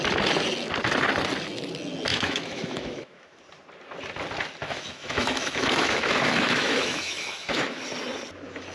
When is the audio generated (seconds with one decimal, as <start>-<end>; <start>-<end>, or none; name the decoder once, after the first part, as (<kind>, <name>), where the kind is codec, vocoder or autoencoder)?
2.1-3.4 (autoencoder, DAC-VAE); 4.6-7.8

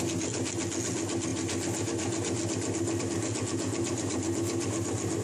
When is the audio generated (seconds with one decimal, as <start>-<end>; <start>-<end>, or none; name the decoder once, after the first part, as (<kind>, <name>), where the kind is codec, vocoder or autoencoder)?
none

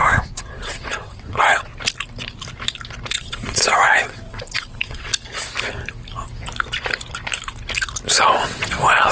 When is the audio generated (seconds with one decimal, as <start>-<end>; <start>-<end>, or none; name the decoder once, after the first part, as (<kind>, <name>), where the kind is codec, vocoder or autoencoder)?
0.0-1.7 (vocoder, WaveNeXt); 3.1-5.1; 8.2-9.1

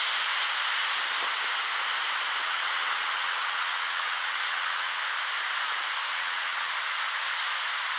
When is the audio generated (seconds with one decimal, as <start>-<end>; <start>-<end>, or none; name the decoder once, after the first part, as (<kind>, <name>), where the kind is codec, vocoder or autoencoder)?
2.4-5.0 (vocoder, WaveNeXt); 6.1-6.7

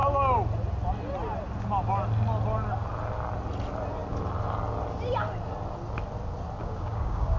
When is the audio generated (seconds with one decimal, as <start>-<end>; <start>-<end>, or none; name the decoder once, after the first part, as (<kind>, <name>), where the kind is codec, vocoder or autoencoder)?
6.6-7.4 (codec, DAC)

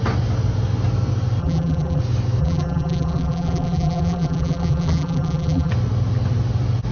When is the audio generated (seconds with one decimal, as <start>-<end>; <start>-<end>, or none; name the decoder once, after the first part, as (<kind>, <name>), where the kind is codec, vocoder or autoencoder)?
1.4-2.0 (vocoder, BigVGAN v2); 2.4-5.7

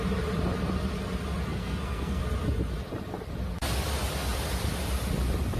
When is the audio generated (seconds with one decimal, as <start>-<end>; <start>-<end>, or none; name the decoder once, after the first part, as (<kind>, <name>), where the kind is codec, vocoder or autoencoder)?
1.5-2.2 (codec, SNAC)

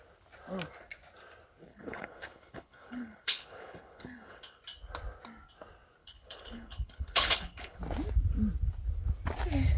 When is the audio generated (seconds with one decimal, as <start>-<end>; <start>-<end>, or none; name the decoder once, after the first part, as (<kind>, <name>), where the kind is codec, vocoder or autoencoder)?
1.7-4.6 (codec, HILCodec); 6.0-7.8